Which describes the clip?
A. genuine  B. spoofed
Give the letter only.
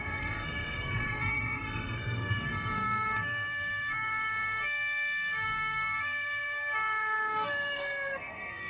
B